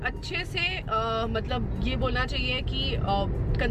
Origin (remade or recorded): recorded